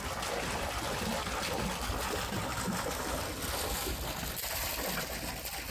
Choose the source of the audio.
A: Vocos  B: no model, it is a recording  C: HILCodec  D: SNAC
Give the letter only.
B